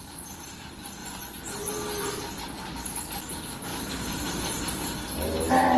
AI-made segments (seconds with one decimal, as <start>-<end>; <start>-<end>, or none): 1.0-1.7